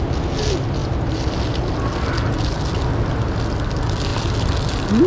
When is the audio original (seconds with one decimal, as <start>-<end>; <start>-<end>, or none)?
0.0-5.1

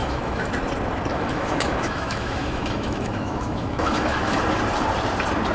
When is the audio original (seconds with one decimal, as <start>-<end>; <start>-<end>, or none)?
0.5-1.1; 4.4-5.5

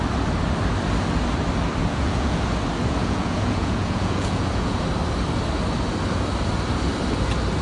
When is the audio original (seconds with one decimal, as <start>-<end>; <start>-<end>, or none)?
0.0-1.8; 2.4-3.0; 4.8-7.6

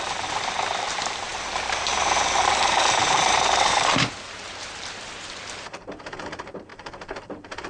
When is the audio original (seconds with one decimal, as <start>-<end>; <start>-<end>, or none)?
none